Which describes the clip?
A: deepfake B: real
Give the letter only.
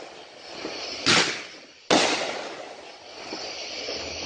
B